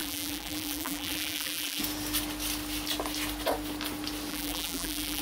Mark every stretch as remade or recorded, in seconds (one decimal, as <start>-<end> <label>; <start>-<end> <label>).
0.0-1.8 remade; 1.8-4.3 recorded; 4.3-5.2 remade